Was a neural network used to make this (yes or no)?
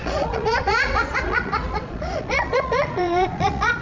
yes